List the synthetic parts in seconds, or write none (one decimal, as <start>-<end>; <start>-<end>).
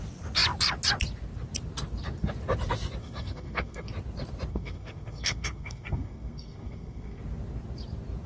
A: 3.0-3.9; 4.5-7.2